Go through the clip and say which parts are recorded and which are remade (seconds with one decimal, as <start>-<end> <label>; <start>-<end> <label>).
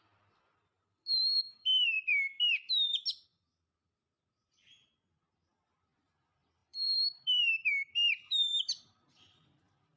0.0-2.1 remade; 2.1-5.7 recorded; 5.7-10.0 remade